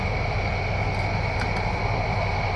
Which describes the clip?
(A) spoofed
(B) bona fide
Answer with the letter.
B